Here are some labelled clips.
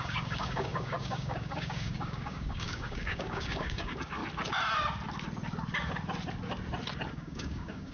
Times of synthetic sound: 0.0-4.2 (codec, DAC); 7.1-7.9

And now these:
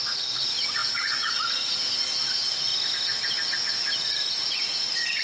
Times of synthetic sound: 0.0-2.7 (vocoder, Vocos); 4.3-5.2

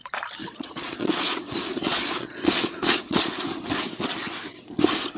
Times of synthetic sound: 0.4-3.2 (vocoder, Vocos)

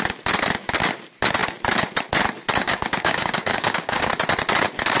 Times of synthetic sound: 2.6-4.1 (codec, DAC)

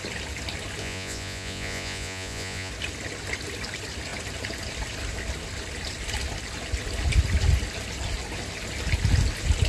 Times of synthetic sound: 0.8-2.7 (vocoder, Vocos)

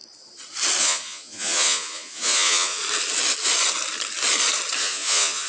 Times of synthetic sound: 0.8-2.8 (vocoder, Vocos); 4.8-5.5